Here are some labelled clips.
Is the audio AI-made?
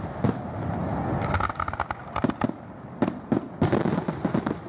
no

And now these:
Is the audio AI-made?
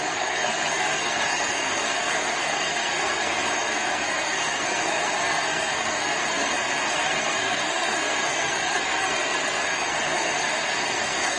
yes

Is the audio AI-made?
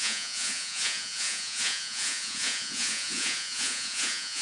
yes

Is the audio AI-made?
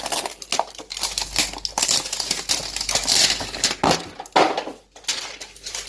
no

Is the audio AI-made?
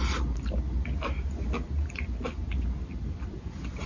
no